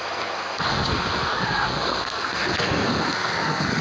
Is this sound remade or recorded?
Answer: remade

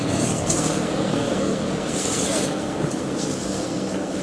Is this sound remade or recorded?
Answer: remade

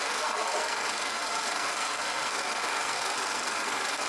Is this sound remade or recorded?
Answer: remade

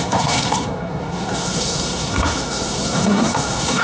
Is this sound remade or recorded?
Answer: remade